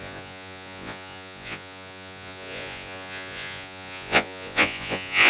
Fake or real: fake